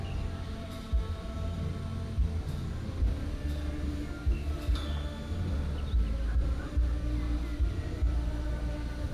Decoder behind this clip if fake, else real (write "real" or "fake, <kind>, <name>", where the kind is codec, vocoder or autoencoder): real